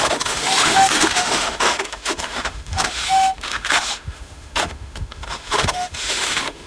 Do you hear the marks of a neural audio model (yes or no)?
yes